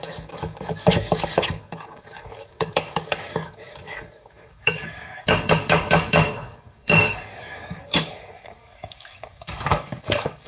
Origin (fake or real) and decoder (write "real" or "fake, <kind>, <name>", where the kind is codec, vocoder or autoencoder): fake, codec, DAC